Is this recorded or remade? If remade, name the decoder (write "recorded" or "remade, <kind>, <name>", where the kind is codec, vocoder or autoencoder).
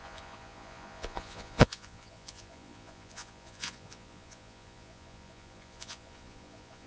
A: remade, vocoder, Vocos